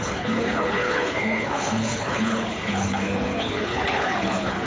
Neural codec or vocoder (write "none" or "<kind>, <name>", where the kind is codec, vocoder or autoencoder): codec, HILCodec